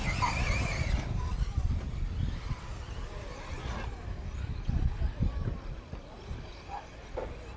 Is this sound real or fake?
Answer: real